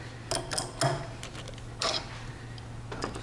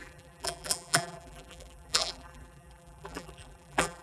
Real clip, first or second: first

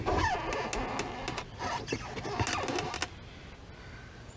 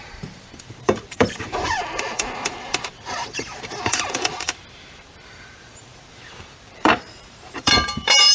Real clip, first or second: first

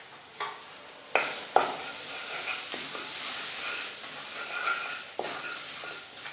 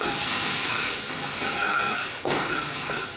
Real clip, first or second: first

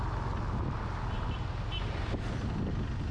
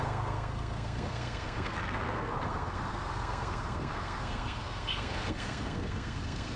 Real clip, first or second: first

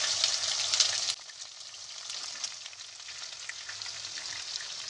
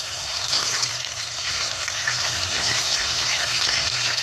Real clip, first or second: first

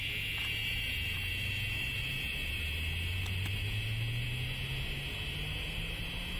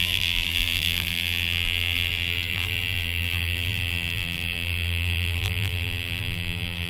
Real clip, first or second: first